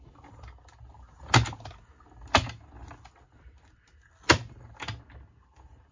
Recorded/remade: recorded